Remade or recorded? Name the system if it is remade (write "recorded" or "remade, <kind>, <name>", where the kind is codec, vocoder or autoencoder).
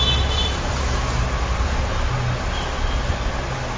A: recorded